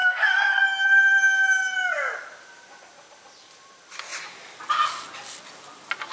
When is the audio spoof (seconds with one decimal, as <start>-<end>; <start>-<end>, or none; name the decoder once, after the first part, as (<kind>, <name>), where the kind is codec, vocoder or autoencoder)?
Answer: 0.0-0.6 (codec, SNAC)